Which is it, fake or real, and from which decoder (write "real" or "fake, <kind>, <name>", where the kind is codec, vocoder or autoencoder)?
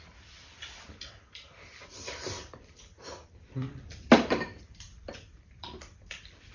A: fake, vocoder, BigVGAN v2